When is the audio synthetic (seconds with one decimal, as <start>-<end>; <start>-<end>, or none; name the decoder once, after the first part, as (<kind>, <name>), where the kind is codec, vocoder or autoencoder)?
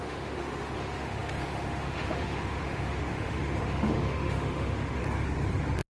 0.0-5.0 (autoencoder, DAC-VAE)